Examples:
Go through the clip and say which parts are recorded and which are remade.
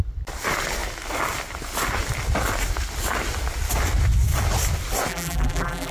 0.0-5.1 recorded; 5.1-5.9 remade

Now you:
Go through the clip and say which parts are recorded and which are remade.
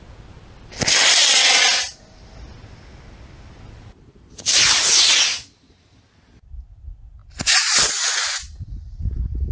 0.0-9.5 recorded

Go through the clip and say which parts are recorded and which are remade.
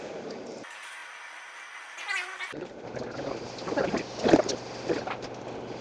0.0-5.8 recorded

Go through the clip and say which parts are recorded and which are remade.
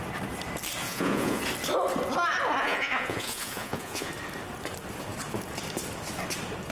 0.0-0.8 recorded; 0.8-1.4 remade; 1.4-2.6 recorded; 2.6-4.1 remade; 4.1-6.7 recorded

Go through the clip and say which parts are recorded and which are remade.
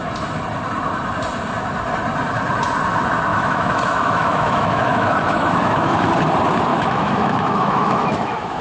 0.0-3.3 recorded; 3.3-6.1 remade; 6.1-6.7 recorded; 6.7-8.6 remade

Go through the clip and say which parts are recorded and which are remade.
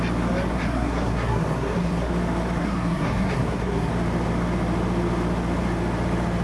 0.0-0.5 recorded; 0.5-2.1 remade; 2.1-2.6 recorded; 2.6-3.9 remade; 3.9-6.4 recorded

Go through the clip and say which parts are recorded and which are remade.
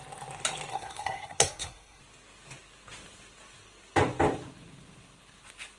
0.0-0.7 recorded; 0.7-2.0 remade; 2.0-5.8 recorded